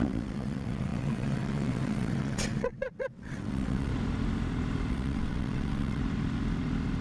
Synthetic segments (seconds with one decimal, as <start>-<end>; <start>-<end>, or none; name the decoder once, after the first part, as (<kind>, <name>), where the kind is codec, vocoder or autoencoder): 0.0-3.9 (vocoder, WaveNeXt); 4.9-6.0

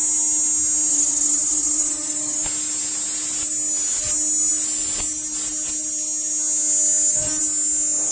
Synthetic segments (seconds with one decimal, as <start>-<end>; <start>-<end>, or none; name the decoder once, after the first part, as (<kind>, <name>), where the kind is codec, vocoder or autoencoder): 0.9-2.4 (vocoder, WaveNeXt)

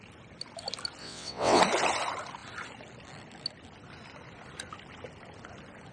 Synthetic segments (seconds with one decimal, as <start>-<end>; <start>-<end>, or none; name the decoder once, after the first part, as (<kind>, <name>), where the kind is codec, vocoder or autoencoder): 1.0-1.6 (vocoder, WaveNeXt)

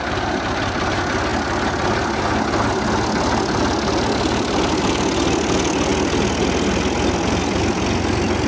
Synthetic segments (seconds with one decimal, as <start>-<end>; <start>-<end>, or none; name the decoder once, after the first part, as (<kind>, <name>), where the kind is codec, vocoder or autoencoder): none